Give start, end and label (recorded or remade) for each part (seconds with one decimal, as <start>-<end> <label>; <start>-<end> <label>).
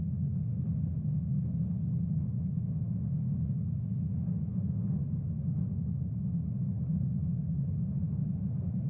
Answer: 0.0-8.9 recorded